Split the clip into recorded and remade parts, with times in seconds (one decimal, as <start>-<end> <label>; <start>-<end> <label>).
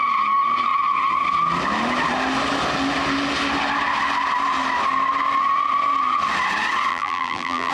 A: 0.0-6.9 recorded; 6.9-7.7 remade